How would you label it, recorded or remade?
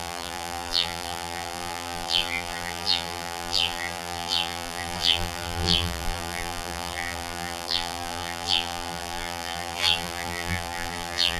remade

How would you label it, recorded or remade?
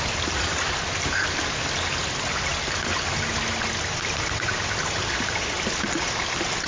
recorded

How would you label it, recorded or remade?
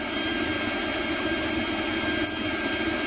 recorded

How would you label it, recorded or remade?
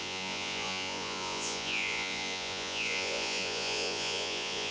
remade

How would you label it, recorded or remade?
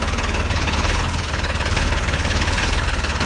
remade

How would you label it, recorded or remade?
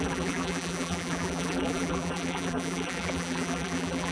remade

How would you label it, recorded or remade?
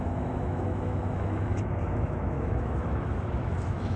remade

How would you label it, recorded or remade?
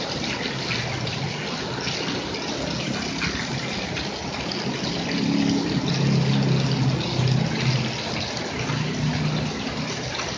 recorded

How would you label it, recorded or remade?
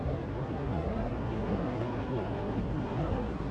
remade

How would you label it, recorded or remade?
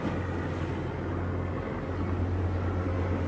recorded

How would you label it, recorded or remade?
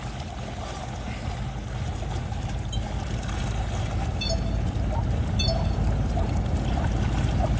recorded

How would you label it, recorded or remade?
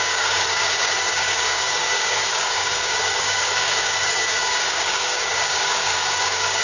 remade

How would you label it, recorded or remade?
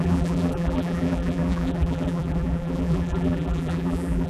remade